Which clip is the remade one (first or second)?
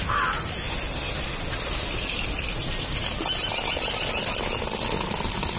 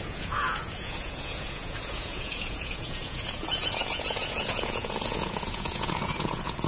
second